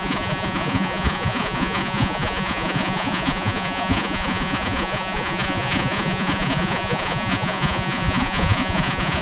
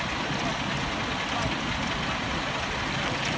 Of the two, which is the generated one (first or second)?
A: first